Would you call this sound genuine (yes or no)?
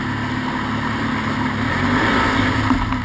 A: yes